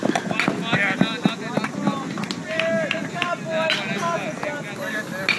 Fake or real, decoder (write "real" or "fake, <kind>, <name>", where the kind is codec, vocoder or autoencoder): real